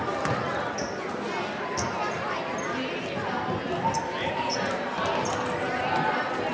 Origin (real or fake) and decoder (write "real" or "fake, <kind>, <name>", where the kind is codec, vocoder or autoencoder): real